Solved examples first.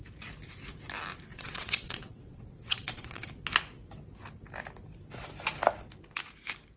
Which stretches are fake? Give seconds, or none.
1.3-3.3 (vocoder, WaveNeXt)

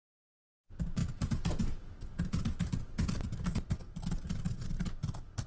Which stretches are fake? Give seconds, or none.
none

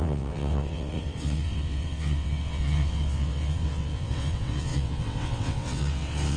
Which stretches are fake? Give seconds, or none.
0.0-6.4 (vocoder, WaveNeXt)

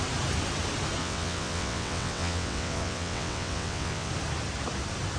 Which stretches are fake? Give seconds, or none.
1.0-4.1 (vocoder, WaveNeXt)

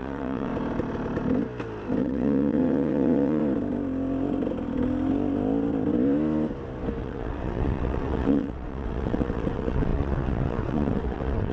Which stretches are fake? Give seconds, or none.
0.0-0.5 (vocoder, WaveNeXt); 2.0-3.4; 7.0-11.5

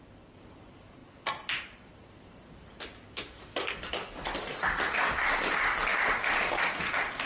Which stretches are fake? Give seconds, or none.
none